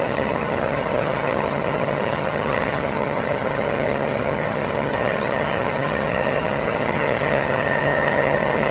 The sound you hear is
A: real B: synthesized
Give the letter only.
B